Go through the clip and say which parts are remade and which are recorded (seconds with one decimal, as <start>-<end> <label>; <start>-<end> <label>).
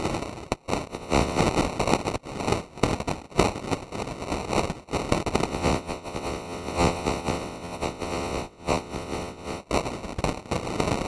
0.0-0.9 recorded; 0.9-1.4 remade; 1.4-5.5 recorded; 5.5-9.6 remade; 9.6-11.1 recorded